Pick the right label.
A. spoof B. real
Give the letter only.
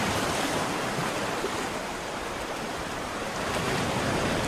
A